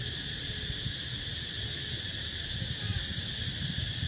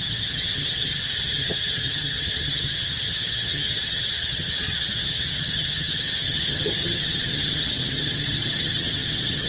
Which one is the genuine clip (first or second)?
first